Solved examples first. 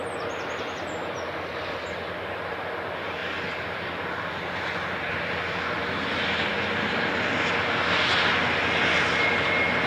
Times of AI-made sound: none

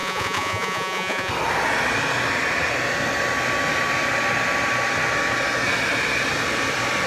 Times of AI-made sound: 0.0-1.3 (vocoder, Vocos)

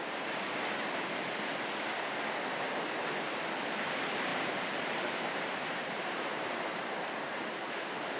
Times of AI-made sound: 4.3-8.2 (vocoder, BigVGAN v2)

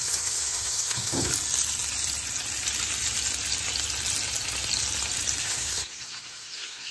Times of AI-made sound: 0.0-1.3 (codec, SNAC); 5.4-6.9

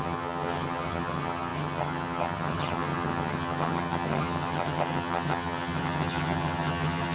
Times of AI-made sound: 0.0-7.1 (vocoder, HiFi-GAN)

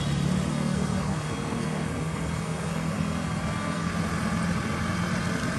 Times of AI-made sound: 0.5-3.9 (codec, SNAC)

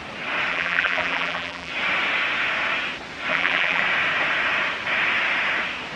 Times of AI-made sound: 0.5-1.7 (vocoder, BigVGAN v2); 3.3-3.8

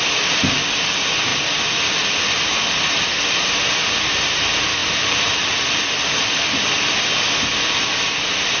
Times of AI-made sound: 4.8-5.5 (vocoder, BigVGAN v2)